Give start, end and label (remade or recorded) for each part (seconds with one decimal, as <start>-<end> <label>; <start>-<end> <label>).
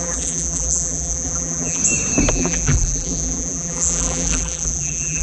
0.0-1.8 remade; 1.8-2.3 recorded; 2.3-5.2 remade